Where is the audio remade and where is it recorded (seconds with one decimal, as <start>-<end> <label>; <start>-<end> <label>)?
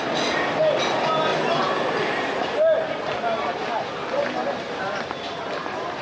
0.0-6.0 recorded